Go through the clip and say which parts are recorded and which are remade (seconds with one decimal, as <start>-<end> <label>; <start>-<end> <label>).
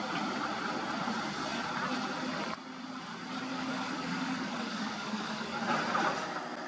0.0-3.5 recorded; 3.5-5.6 remade; 5.6-6.7 recorded